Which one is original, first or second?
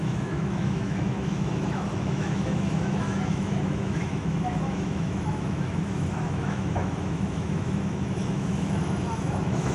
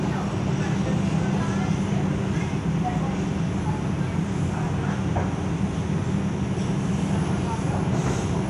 second